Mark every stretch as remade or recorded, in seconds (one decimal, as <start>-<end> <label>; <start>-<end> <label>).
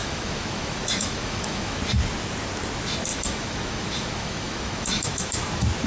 0.0-1.8 remade; 1.8-3.1 recorded; 3.1-5.3 remade; 5.3-5.9 recorded